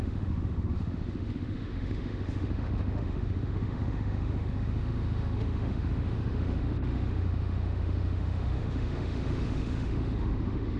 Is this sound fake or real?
fake